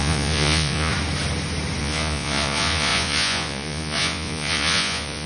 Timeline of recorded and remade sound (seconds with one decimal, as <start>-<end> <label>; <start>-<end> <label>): 0.0-0.9 remade; 0.9-1.8 recorded; 1.8-5.3 remade